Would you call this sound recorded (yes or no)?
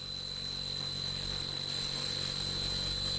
yes